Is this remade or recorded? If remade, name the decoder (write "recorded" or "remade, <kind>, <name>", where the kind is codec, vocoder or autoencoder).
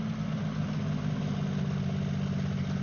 recorded